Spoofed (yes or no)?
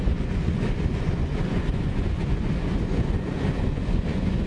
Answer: yes